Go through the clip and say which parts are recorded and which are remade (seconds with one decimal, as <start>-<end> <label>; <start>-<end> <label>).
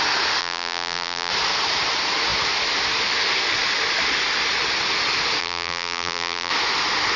0.0-0.4 recorded; 0.4-1.3 remade; 1.3-5.4 recorded; 5.4-6.5 remade; 6.5-7.2 recorded